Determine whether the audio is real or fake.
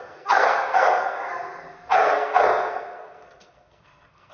fake